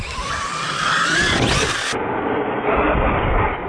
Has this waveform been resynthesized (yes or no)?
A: no